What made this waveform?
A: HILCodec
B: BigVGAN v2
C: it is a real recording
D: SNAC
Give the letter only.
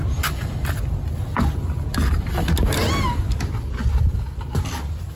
C